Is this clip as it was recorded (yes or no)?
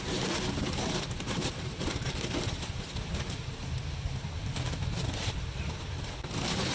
yes